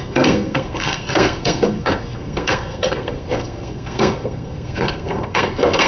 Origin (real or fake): fake